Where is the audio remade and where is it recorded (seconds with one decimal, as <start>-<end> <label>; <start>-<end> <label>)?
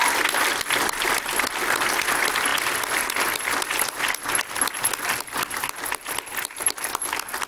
0.0-7.5 recorded